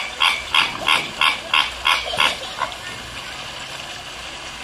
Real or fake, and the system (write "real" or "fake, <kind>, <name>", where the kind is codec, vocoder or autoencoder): real